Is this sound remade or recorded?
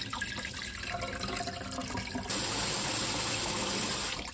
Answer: recorded